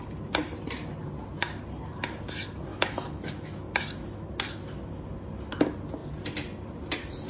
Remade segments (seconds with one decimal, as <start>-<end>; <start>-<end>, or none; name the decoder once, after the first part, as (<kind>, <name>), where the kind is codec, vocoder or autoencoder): 2.7-3.3 (autoencoder, DAC-VAE)